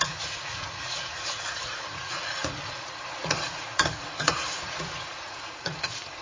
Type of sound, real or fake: fake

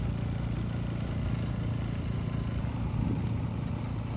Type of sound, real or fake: real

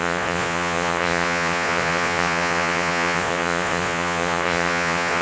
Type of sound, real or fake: fake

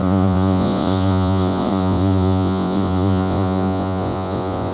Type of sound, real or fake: fake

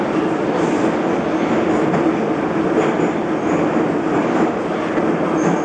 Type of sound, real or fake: real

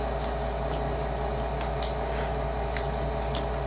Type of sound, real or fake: real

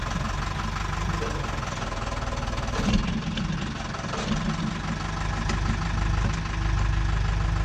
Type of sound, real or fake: real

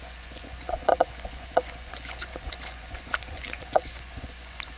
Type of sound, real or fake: fake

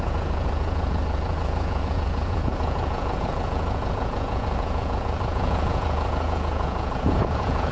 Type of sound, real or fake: fake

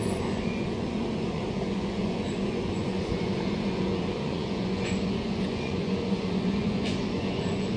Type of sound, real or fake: fake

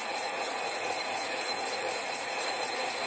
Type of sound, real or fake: fake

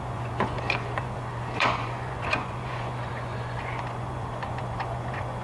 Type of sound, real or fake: fake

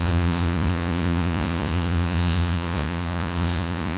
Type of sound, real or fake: fake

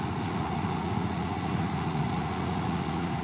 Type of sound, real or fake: fake